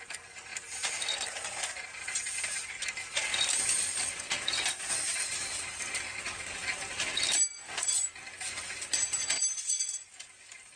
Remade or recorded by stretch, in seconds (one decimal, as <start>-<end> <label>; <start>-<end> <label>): 0.0-10.8 recorded